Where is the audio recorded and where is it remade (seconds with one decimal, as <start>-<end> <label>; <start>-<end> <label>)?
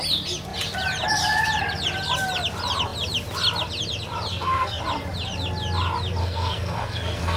0.0-4.3 recorded; 4.3-4.8 remade; 4.8-6.2 recorded; 6.2-7.4 remade